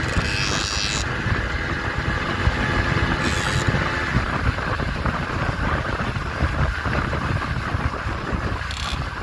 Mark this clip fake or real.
real